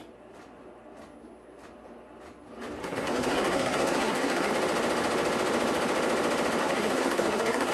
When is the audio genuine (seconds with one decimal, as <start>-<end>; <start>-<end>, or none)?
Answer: 0.0-2.8; 4.5-6.6